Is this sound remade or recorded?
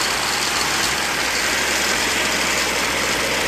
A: recorded